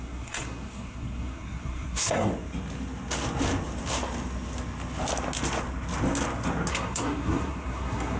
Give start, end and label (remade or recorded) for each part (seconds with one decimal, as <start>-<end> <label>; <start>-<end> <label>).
0.0-2.3 remade; 2.3-6.7 recorded; 6.7-8.2 remade